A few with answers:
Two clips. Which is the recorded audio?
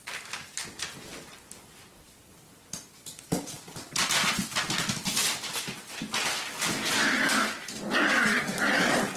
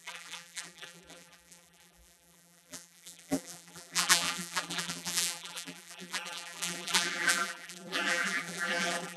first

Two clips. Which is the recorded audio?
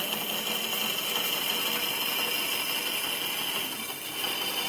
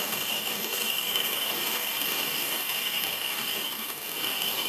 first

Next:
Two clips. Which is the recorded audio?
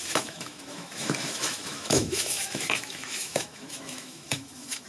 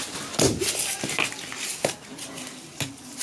second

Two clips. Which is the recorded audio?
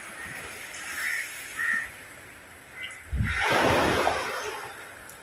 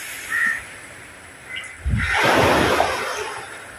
first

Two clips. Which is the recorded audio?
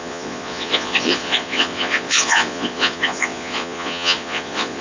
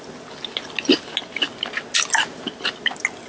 second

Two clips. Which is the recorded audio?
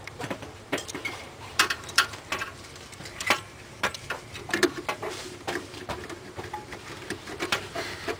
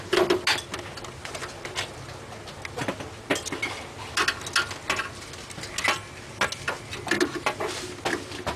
second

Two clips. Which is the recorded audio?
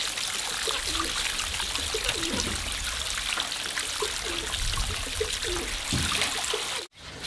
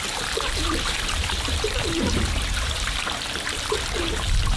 first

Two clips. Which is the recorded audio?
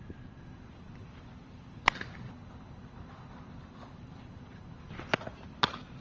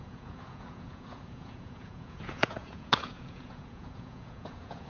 first